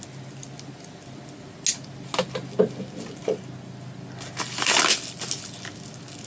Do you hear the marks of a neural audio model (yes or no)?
no